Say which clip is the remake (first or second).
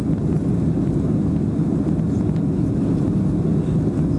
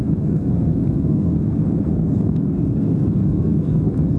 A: second